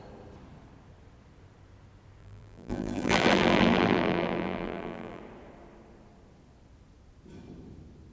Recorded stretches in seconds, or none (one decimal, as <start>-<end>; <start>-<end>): 0.0-2.2; 5.2-8.1